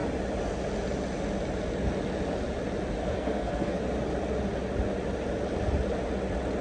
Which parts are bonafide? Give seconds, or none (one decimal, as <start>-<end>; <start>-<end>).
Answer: 0.0-3.0; 3.8-6.6

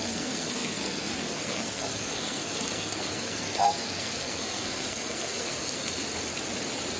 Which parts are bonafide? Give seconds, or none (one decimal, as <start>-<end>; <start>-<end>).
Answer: 6.0-7.0

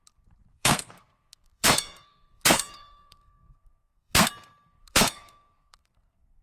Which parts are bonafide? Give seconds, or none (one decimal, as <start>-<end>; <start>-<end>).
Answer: 0.0-0.5; 4.3-4.8

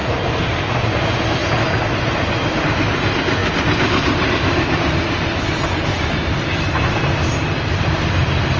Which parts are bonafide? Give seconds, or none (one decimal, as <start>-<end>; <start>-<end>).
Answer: 0.0-8.6

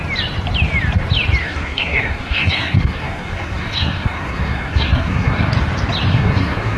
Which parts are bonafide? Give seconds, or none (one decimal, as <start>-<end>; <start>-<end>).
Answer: 0.0-1.4; 5.5-6.1

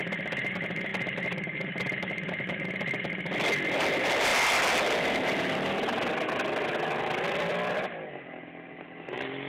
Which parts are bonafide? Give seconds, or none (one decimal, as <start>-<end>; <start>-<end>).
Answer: 0.0-9.5

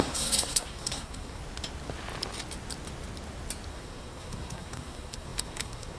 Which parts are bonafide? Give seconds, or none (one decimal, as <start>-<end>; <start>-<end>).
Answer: 1.4-3.7